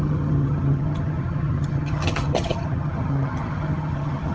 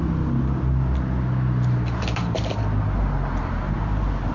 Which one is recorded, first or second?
second